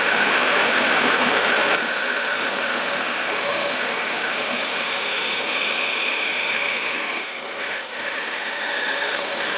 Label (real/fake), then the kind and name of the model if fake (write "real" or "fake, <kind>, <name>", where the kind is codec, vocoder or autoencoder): fake, autoencoder, DAC-VAE